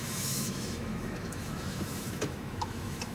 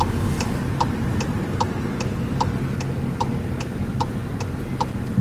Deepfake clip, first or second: first